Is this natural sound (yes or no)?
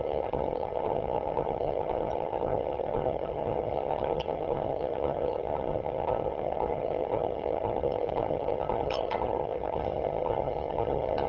no